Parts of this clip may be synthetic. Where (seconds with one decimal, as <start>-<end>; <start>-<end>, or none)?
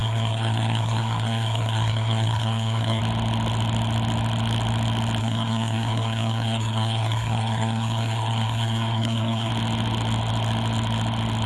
0.0-3.0; 5.2-9.5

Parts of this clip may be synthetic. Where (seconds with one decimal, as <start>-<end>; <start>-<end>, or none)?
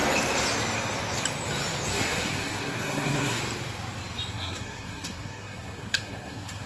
1.9-3.4; 4.3-6.7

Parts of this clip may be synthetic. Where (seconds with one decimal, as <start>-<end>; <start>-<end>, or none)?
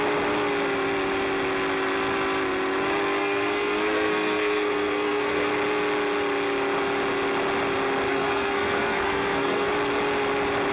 3.2-5.5; 8.1-9.7